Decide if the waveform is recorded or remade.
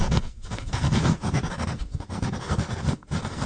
remade